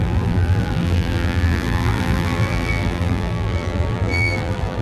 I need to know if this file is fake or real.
fake